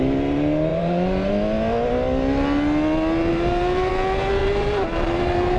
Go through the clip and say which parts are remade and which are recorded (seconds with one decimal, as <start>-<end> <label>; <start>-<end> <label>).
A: 0.0-0.7 recorded; 0.7-1.3 remade; 1.3-3.3 recorded; 3.3-3.9 remade; 3.9-4.4 recorded; 4.4-5.6 remade

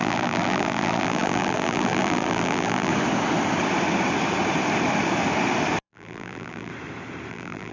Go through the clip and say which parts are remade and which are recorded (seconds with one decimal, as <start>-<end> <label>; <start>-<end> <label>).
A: 0.0-2.9 remade; 2.9-5.8 recorded; 5.8-6.7 remade; 6.7-7.3 recorded; 7.3-7.7 remade